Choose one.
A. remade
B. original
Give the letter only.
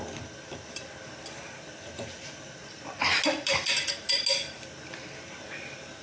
B